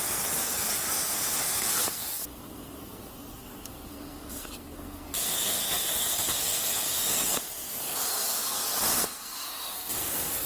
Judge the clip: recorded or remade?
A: remade